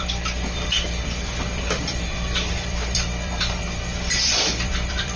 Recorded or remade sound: remade